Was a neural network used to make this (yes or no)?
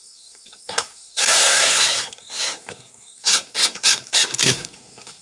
yes